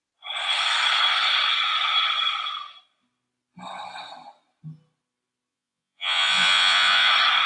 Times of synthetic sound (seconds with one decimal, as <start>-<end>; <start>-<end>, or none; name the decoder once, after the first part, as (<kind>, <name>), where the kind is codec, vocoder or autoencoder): 5.5-7.1 (vocoder, Vocos)